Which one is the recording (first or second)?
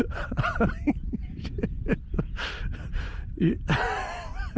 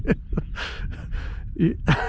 second